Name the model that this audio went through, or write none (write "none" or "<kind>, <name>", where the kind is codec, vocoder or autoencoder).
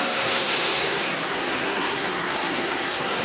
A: codec, SNAC